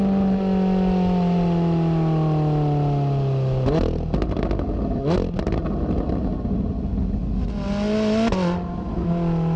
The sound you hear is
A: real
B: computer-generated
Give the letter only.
A